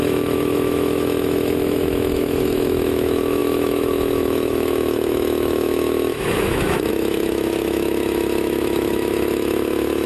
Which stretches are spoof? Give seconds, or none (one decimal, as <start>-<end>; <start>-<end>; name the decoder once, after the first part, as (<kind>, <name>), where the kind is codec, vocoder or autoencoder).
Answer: 0.0-10.1 (autoencoder, DAC-VAE)